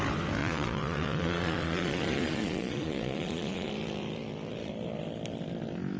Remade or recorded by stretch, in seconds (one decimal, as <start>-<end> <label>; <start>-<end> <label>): 0.0-0.4 recorded; 0.4-3.7 remade; 3.7-6.0 recorded